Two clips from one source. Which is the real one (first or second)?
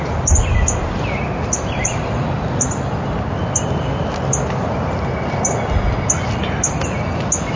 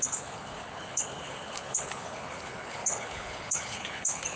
first